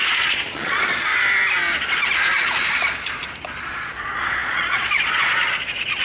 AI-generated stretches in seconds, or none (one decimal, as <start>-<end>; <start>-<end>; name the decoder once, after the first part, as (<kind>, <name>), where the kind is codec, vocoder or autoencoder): 0.0-1.1 (vocoder, Vocos); 3.6-6.0